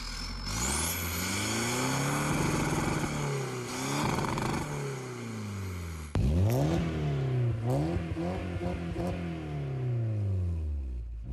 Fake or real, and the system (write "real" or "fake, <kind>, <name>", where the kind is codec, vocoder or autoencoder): real